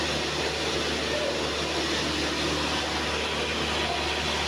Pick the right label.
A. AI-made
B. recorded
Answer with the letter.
B